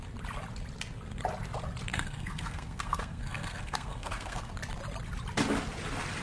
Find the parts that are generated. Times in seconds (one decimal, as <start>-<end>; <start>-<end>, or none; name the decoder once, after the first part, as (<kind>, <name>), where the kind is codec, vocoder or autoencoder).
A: 1.9-4.5 (codec, SNAC)